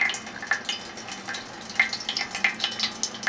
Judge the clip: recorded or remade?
recorded